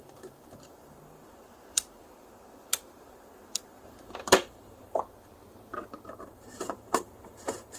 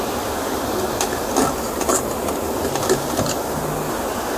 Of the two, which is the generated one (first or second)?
first